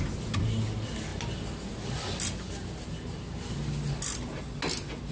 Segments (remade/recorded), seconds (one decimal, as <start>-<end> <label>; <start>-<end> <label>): 0.0-5.1 recorded